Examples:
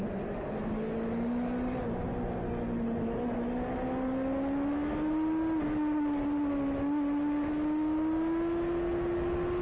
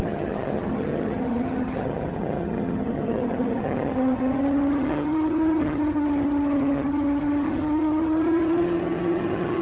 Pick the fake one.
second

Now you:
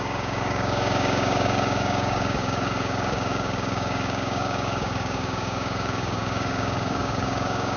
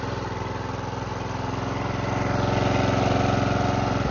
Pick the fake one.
first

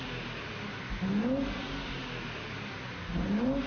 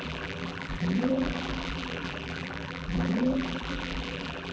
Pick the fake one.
second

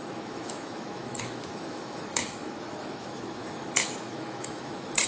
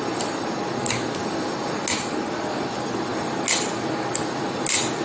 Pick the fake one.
first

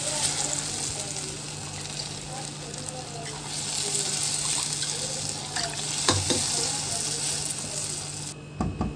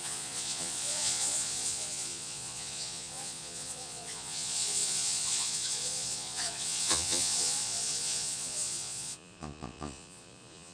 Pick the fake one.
second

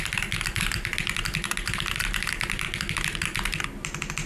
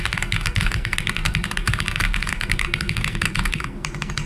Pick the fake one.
second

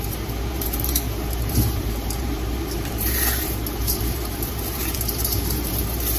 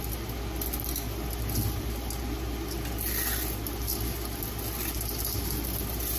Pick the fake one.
first